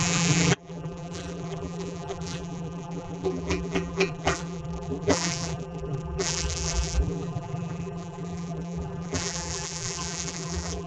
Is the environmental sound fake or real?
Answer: fake